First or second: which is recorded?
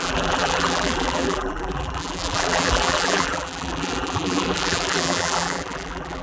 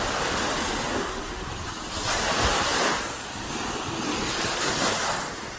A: second